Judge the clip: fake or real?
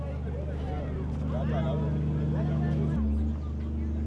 real